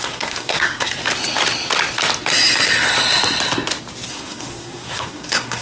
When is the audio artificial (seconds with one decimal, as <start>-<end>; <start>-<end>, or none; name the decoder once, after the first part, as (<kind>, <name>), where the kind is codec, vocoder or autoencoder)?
0.0-1.0 (codec, SNAC); 4.1-5.6